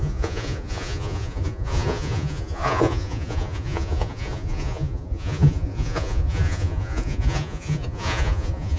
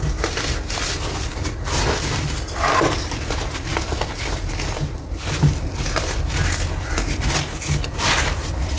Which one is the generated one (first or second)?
first